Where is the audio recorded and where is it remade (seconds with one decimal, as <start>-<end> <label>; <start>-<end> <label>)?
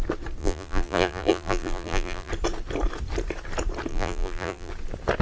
0.0-0.4 recorded; 0.4-2.3 remade; 2.3-3.9 recorded; 3.9-4.7 remade; 4.7-5.2 recorded